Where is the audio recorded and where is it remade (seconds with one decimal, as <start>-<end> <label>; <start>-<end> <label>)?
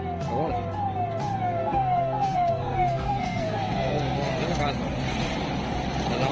0.0-1.6 recorded; 1.6-4.3 remade; 4.3-6.3 recorded